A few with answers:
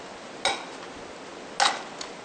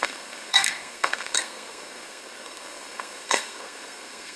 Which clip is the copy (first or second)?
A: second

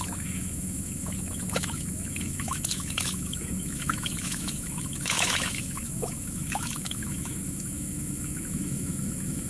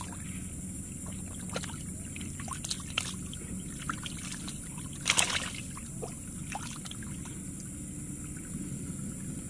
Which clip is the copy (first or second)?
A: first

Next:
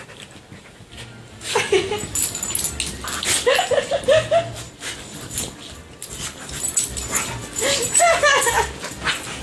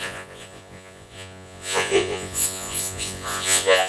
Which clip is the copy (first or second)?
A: second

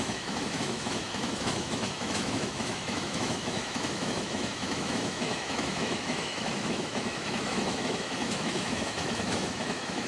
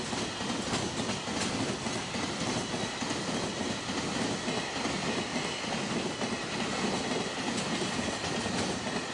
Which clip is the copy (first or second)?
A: first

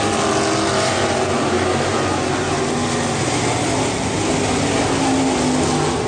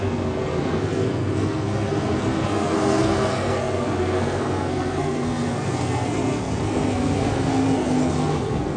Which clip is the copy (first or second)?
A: second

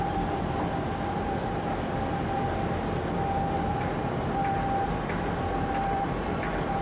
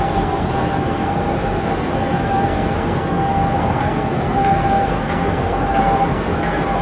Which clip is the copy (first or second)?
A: second